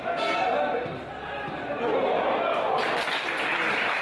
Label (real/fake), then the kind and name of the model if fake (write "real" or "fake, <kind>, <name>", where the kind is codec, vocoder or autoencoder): real